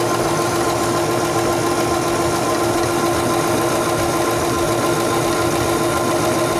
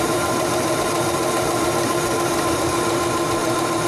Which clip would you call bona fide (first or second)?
first